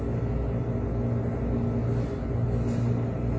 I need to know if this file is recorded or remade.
recorded